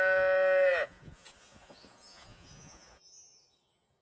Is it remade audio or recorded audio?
remade